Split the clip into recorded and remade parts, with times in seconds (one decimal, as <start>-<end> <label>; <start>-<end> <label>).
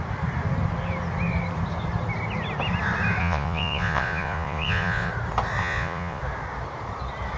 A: 0.0-3.2 recorded; 3.2-5.1 remade; 5.1-5.6 recorded; 5.6-6.2 remade; 6.2-7.4 recorded